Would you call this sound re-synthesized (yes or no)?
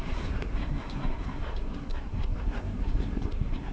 yes